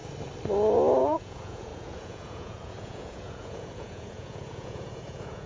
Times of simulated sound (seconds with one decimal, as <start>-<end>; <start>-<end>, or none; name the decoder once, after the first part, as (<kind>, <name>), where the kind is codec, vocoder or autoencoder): 1.0-5.5 (vocoder, Vocos)